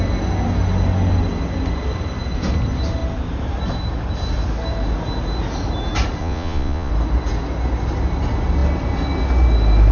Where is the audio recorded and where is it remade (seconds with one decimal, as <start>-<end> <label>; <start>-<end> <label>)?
0.0-6.2 recorded; 6.2-6.9 remade; 6.9-9.9 recorded